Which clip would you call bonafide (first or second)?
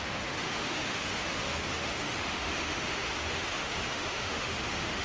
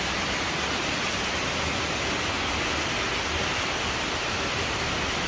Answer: second